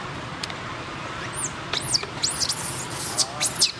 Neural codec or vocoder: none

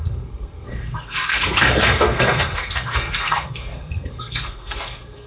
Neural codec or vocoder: codec, SNAC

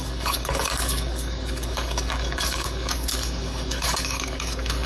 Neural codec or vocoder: codec, DAC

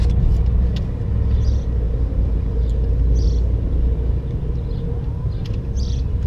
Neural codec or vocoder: none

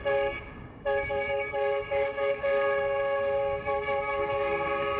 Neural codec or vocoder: codec, DAC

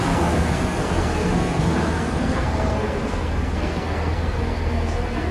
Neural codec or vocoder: codec, SNAC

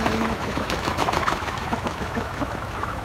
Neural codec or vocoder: autoencoder, DAC-VAE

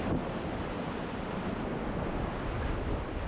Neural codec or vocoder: none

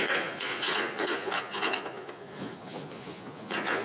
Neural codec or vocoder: vocoder, Vocos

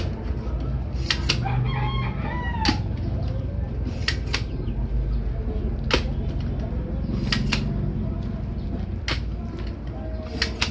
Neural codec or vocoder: none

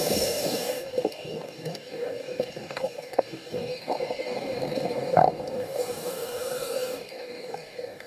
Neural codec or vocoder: codec, DAC